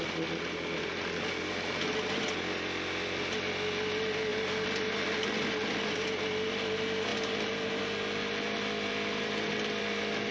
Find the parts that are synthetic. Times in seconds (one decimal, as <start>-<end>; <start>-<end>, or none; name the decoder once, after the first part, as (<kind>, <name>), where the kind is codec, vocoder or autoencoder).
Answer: none